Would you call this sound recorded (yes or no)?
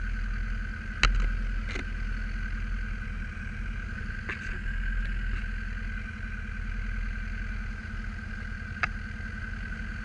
yes